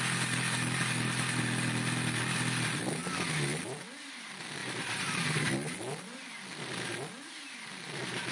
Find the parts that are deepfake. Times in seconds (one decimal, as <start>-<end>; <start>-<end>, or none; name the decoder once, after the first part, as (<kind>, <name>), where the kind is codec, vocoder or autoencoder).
4.6-5.5 (vocoder, BigVGAN v2)